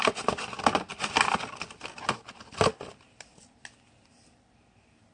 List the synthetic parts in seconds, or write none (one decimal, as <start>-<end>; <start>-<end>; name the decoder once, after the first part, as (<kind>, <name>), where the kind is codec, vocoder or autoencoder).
none